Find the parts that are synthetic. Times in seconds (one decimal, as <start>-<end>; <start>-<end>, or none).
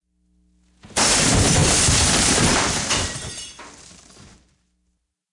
1.6-4.6